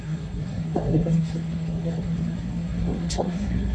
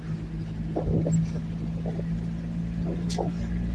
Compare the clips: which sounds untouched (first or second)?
second